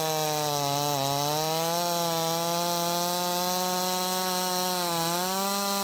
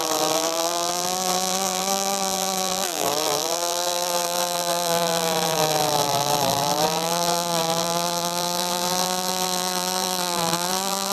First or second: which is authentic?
first